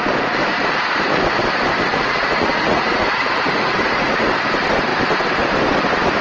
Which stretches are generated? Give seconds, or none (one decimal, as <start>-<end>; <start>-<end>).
0.4-1.2; 1.9-4.3